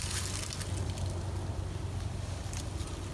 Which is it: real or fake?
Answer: real